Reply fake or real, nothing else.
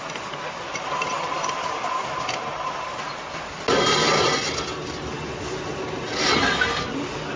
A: real